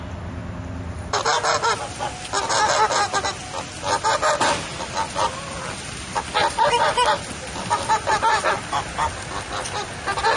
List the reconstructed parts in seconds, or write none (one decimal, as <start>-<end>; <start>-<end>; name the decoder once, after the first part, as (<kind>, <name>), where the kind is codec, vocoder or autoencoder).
4.7-5.5 (vocoder, BigVGAN v2); 6.4-7.2